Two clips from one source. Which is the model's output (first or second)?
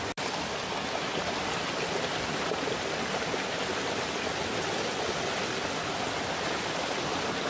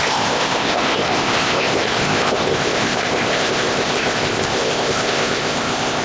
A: second